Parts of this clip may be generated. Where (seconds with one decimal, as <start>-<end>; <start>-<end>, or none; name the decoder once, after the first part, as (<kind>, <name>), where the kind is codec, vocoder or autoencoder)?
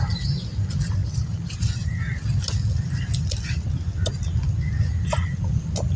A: 1.0-2.1 (vocoder, BigVGAN v2)